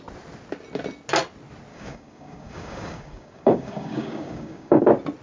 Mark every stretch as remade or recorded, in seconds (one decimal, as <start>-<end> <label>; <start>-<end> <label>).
0.0-1.7 recorded; 1.7-4.8 remade; 4.8-5.2 recorded